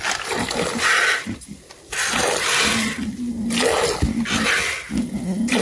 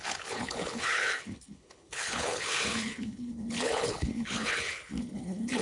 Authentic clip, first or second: first